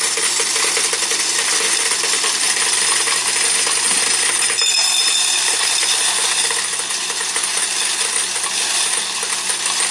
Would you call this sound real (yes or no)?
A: yes